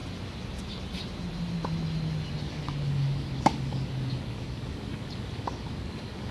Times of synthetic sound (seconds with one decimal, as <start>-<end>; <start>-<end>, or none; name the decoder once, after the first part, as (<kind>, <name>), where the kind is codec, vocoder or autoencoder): 2.4-6.3 (codec, DAC)